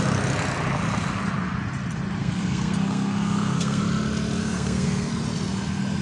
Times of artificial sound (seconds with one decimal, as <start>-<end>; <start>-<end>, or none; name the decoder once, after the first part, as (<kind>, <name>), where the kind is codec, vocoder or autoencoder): 2.2-3.8 (codec, SNAC); 4.4-5.1